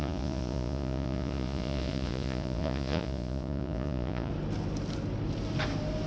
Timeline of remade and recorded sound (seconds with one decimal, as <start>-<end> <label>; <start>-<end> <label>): 0.0-4.3 remade; 4.3-6.1 recorded